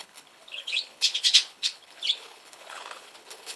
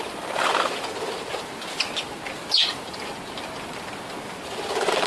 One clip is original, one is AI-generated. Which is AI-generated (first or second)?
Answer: first